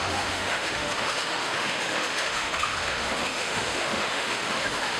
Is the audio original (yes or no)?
no